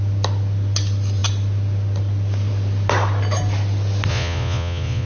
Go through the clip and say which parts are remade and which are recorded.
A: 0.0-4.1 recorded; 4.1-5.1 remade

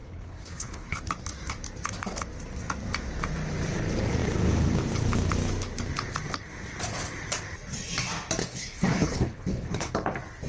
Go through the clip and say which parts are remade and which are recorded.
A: 0.0-1.0 remade; 1.0-8.4 recorded; 8.4-9.9 remade; 9.9-10.5 recorded

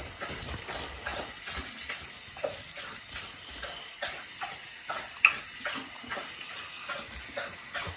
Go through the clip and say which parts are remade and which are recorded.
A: 0.0-8.0 recorded

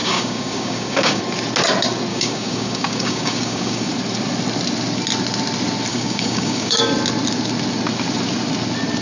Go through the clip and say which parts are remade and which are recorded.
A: 0.0-1.2 remade; 1.2-2.1 recorded; 2.1-3.9 remade; 3.9-5.9 recorded; 5.9-6.9 remade; 6.9-9.0 recorded